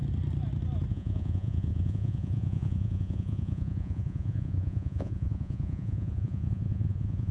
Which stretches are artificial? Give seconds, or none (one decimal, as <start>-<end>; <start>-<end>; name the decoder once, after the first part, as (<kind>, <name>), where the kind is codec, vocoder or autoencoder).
0.9-7.3 (vocoder, Vocos)

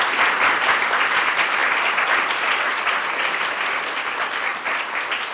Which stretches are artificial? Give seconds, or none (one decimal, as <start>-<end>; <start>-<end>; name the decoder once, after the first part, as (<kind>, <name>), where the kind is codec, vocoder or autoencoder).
none

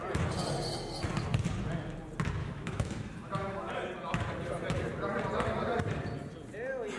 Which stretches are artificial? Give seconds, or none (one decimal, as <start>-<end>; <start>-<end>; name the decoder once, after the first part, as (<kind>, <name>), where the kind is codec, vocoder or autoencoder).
2.4-3.7 (autoencoder, DAC-VAE)

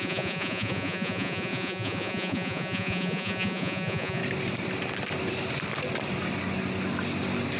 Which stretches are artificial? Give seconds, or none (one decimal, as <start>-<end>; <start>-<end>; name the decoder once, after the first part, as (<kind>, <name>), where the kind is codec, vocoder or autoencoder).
0.0-4.2 (vocoder, Vocos)

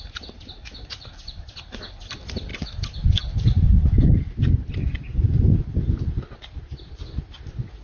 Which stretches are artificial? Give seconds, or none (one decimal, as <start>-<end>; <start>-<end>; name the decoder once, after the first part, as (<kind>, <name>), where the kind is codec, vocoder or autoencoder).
none

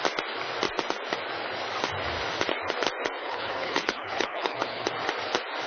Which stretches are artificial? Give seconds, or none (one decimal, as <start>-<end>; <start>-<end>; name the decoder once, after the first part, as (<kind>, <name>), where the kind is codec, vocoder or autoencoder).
3.2-4.9 (codec, HILCodec)